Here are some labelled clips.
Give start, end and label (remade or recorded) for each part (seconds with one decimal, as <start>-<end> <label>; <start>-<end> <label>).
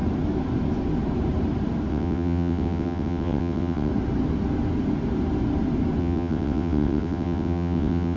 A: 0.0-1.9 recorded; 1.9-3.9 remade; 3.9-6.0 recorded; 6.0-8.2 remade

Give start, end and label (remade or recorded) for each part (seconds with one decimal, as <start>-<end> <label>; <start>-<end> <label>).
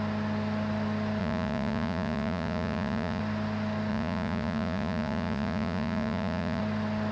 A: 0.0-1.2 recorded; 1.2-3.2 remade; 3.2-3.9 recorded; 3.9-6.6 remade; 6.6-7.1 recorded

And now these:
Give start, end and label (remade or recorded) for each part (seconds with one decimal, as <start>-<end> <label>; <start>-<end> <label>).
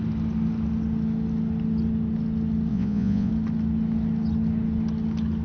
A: 0.0-2.7 recorded; 2.7-3.3 remade; 3.3-5.4 recorded